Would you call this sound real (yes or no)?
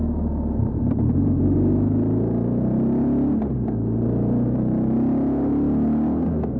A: yes